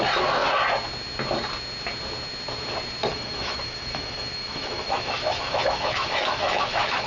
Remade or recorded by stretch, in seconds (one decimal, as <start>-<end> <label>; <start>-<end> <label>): 0.0-3.1 recorded; 3.1-7.1 remade